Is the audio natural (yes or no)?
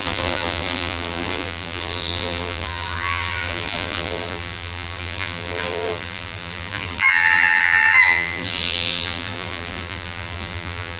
no